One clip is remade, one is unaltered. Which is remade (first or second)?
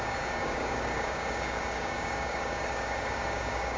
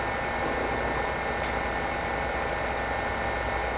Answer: first